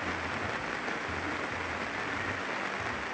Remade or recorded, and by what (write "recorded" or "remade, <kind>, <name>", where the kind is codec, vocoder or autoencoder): recorded